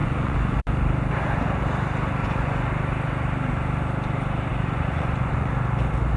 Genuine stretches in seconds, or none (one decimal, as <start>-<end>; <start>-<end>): 0.6-2.2; 2.7-4.5; 5.5-6.2